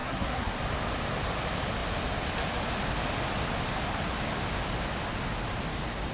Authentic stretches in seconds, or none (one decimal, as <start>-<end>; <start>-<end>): 0.6-6.1